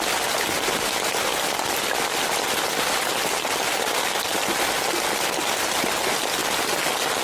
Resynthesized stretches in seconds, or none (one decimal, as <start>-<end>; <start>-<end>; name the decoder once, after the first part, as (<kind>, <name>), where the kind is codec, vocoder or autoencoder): none